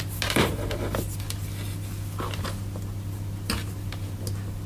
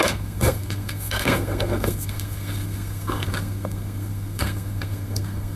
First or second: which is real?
first